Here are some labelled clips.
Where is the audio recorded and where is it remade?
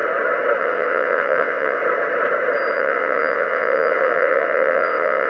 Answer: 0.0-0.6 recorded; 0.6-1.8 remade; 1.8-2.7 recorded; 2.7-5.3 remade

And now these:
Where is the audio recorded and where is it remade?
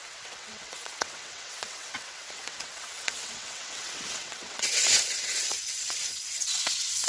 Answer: 0.0-7.1 remade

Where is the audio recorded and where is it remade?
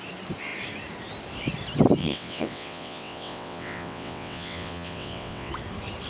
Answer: 0.0-2.0 recorded; 2.0-5.5 remade; 5.5-6.1 recorded